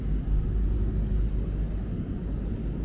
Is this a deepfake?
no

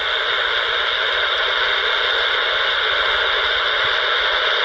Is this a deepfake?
no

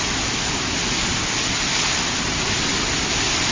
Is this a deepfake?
no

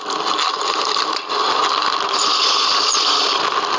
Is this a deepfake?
no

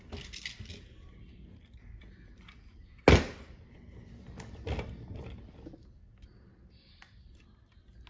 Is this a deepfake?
no